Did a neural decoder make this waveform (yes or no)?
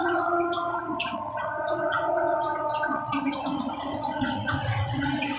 yes